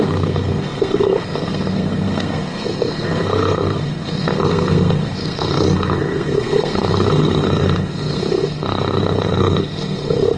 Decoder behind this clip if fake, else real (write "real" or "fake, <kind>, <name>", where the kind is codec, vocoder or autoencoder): fake, codec, SNAC